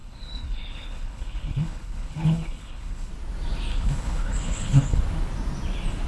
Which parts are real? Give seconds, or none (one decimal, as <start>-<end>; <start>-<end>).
3.1-3.7; 5.0-6.1